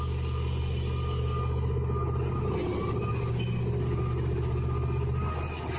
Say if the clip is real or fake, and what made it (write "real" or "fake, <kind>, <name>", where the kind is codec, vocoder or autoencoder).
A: real